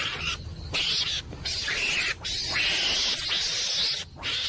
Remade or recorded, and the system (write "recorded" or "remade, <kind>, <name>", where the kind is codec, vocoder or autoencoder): recorded